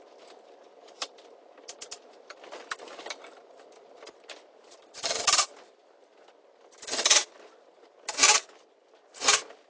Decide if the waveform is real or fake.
real